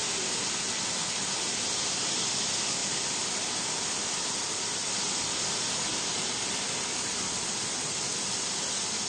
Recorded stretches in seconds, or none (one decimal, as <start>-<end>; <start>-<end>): 0.0-9.1